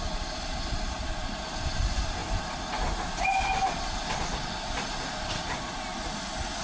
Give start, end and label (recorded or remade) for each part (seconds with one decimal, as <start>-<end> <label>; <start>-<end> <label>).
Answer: 0.0-6.6 recorded